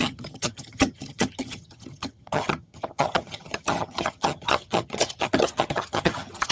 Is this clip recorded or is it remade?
remade